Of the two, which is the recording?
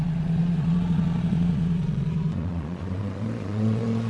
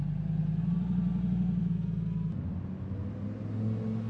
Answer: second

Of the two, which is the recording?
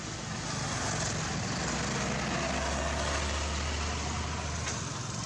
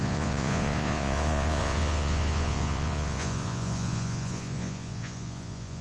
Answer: first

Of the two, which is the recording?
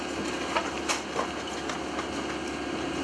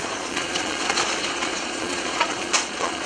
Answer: first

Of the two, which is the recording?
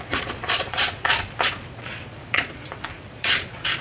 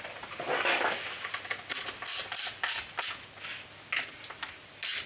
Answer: second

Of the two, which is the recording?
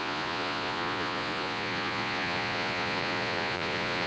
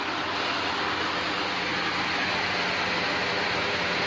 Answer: second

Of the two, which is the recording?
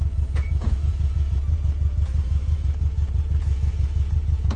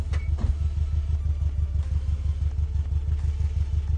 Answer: second